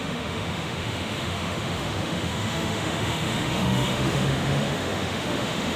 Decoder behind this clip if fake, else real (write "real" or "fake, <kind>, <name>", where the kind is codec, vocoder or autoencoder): fake, autoencoder, DAC-VAE